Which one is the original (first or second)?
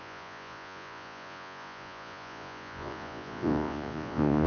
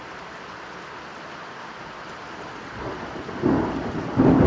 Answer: second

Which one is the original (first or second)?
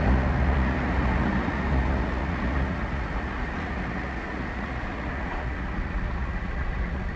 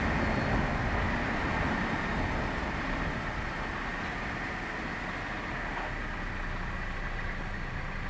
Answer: second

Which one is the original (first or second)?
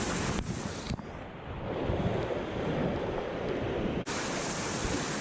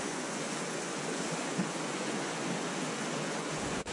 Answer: first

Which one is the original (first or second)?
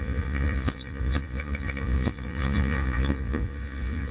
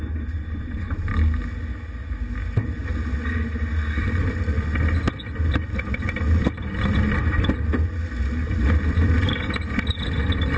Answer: second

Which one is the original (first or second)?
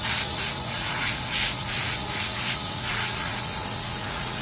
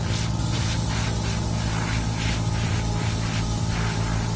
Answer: second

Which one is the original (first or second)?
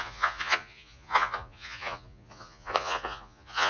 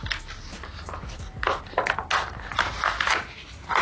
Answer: second